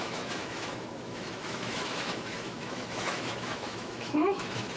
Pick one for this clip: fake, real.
fake